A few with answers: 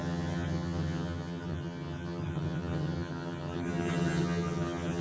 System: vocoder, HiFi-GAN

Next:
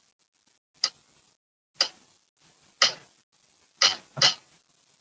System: none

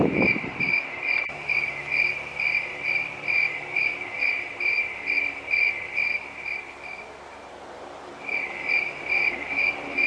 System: vocoder, BigVGAN v2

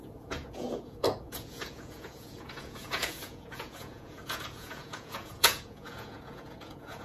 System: vocoder, Vocos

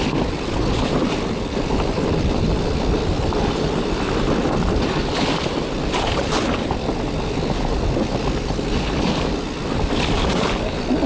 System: none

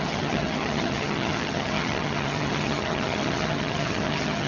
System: vocoder, HiFi-GAN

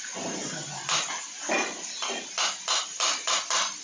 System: none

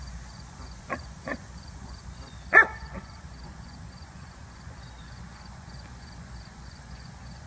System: vocoder, Vocos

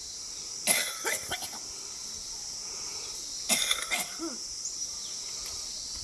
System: none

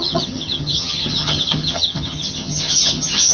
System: vocoder, HiFi-GAN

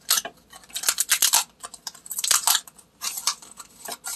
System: none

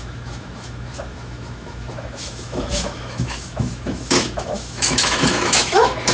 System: autoencoder, DAC-VAE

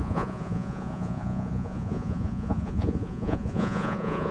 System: vocoder, Vocos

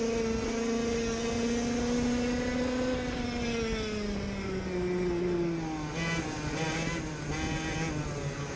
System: none